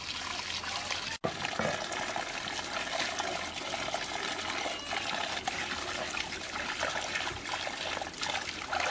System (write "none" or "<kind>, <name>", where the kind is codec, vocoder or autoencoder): none